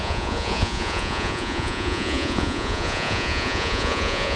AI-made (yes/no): yes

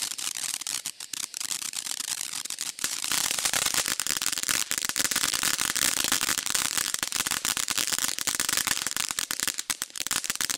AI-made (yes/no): yes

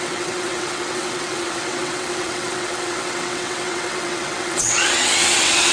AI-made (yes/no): yes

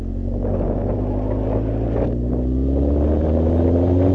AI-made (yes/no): no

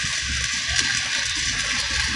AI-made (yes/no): no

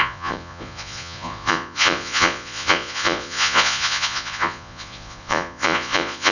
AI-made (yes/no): yes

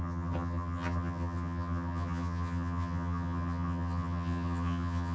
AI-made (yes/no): yes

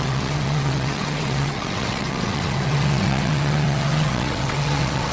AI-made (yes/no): yes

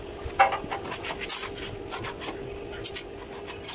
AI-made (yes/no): no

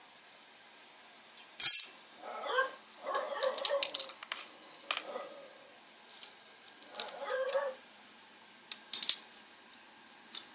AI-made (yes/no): no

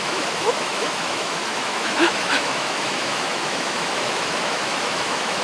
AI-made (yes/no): yes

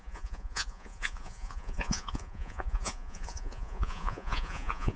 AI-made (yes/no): yes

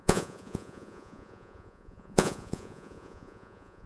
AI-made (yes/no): yes